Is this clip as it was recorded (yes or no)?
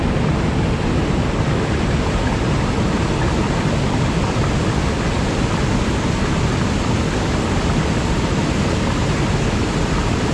yes